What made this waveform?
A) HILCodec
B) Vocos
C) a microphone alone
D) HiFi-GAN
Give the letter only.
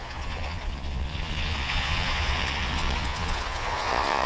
B